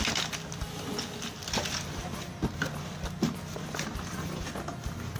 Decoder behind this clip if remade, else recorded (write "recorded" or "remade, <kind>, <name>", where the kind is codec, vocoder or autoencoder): recorded